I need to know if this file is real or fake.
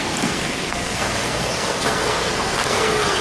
fake